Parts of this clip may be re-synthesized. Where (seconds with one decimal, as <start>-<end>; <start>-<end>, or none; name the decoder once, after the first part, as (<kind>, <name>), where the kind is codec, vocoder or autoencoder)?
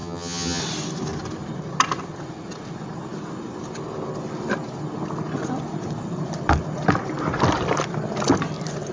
0.0-0.6 (vocoder, HiFi-GAN)